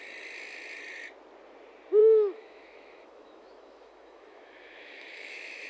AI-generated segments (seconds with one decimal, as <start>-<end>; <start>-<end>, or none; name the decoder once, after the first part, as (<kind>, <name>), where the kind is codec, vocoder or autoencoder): 2.0-5.7 (autoencoder, DAC-VAE)